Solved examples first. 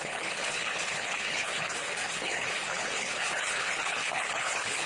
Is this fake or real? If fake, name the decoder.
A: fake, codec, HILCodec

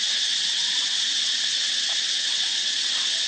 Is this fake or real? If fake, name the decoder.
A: fake, vocoder, WaveNeXt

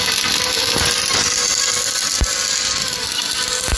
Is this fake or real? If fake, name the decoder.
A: real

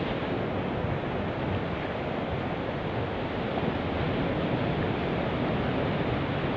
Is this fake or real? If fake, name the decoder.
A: real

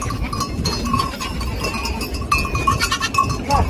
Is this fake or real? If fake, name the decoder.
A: real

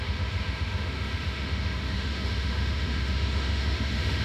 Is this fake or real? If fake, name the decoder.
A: fake, autoencoder, DAC-VAE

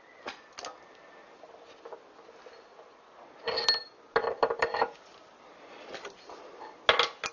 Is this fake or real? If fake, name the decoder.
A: real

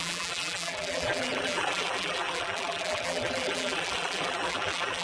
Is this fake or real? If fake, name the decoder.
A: fake, vocoder, BigVGAN v2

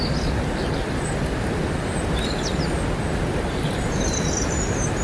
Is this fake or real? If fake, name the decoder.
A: real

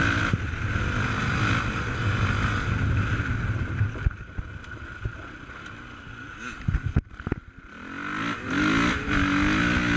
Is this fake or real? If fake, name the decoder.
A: real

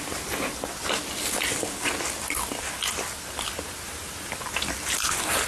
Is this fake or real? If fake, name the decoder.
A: real